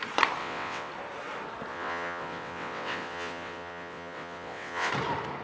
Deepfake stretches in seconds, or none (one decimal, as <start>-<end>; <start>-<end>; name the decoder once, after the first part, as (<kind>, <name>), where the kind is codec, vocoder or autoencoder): 0.4-0.9 (vocoder, WaveNeXt); 1.7-4.9